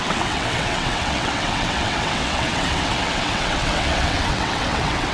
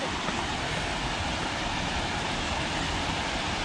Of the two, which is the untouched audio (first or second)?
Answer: second